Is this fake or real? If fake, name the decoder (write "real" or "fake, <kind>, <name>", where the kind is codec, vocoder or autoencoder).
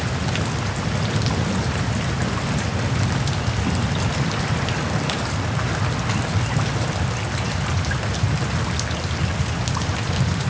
real